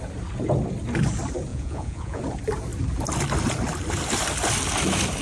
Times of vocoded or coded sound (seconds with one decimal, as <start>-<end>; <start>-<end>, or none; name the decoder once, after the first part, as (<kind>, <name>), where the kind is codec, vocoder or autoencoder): 1.5-2.2 (vocoder, Vocos)